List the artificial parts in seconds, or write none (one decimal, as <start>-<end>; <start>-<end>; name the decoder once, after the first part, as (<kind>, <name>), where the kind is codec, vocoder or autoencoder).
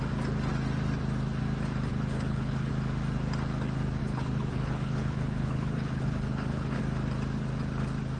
1.9-2.7 (codec, HILCodec); 4.0-6.8